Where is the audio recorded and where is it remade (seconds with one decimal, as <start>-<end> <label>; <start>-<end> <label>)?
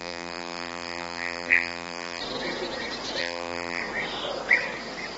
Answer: 0.0-2.2 remade; 2.2-3.2 recorded; 3.2-3.8 remade; 3.8-5.2 recorded